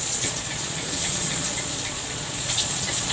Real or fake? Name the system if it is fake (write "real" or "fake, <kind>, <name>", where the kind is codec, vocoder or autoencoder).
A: fake, vocoder, Vocos